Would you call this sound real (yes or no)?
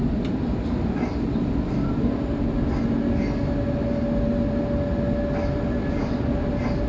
yes